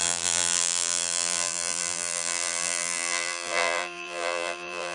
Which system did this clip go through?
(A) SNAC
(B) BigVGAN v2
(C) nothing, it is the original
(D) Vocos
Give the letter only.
B